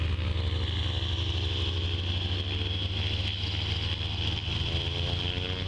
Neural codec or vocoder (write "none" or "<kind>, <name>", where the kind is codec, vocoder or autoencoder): none